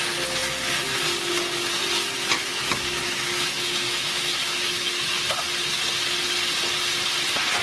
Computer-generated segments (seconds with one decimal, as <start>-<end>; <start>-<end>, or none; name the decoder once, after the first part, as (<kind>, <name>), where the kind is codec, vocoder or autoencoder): 2.4-5.1 (autoencoder, DAC-VAE)